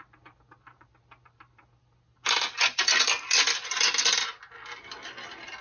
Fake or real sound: real